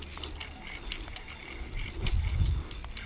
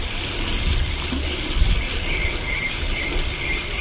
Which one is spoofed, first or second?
second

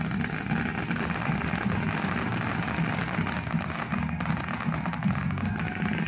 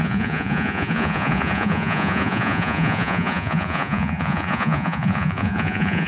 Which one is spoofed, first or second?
second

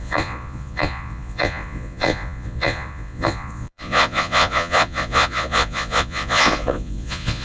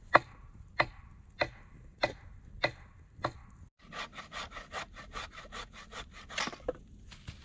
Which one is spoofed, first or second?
first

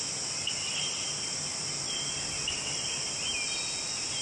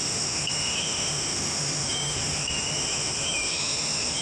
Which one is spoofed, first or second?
second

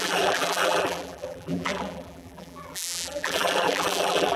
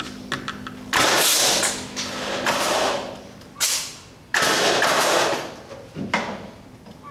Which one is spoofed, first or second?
first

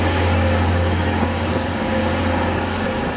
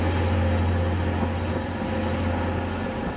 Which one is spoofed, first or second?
first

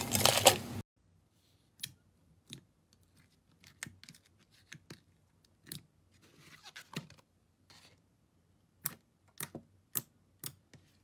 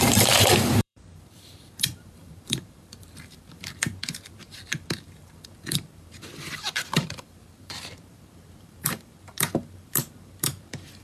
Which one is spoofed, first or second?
second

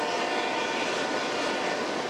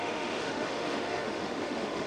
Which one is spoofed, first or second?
second